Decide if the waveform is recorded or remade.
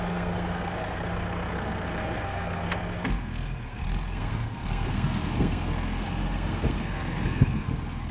remade